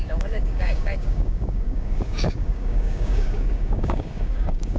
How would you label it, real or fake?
fake